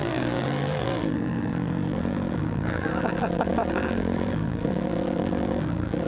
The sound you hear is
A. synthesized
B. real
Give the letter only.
A